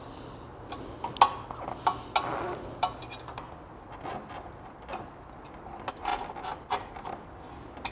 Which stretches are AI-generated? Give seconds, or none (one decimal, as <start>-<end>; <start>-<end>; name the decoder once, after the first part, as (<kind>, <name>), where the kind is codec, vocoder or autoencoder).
none